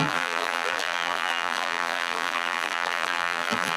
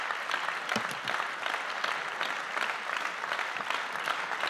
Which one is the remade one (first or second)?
first